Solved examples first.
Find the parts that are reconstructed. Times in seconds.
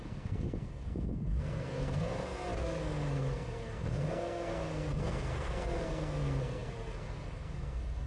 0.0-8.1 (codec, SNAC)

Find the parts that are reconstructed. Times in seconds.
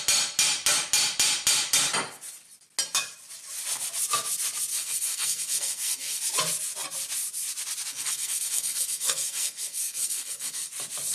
4.7-6.2 (codec, SNAC); 7.9-10.7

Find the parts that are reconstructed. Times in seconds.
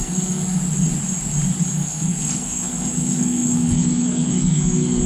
0.0-0.6 (codec, SNAC); 1.7-5.1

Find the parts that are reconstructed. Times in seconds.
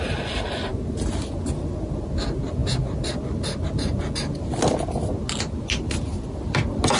none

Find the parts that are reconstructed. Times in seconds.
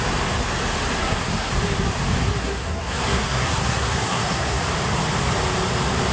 1.0-1.5 (codec, SNAC); 2.4-4.6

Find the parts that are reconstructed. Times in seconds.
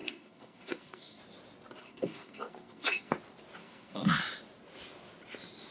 0.0-1.2 (codec, SNAC); 1.8-3.1; 3.6-4.2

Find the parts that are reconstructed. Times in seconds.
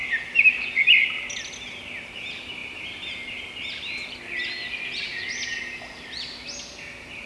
none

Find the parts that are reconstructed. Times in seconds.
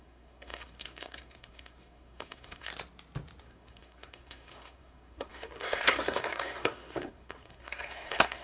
0.0-2.7 (codec, SNAC); 3.4-8.4